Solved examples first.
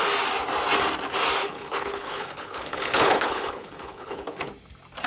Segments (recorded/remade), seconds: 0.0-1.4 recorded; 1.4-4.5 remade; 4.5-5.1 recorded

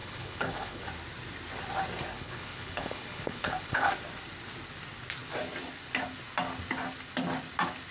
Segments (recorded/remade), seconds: 0.0-0.8 remade; 0.8-2.1 recorded; 2.1-3.9 remade; 3.9-7.9 recorded

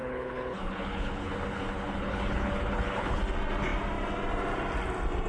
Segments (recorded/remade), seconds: 0.0-3.2 remade; 3.2-5.3 recorded

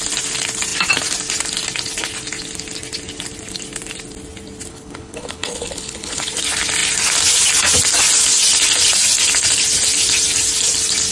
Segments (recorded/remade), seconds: 0.0-4.7 recorded; 4.7-6.3 remade; 6.3-11.1 recorded

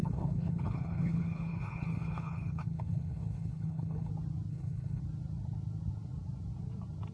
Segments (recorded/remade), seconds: 0.0-4.1 remade; 4.1-4.5 recorded; 4.5-5.0 remade; 5.0-7.1 recorded

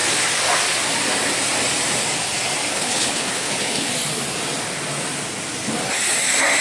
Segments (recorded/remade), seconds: 0.0-2.7 recorded; 2.7-3.9 remade; 3.9-6.6 recorded